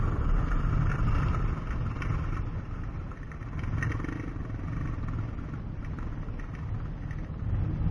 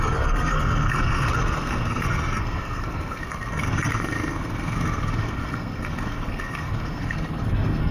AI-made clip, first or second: second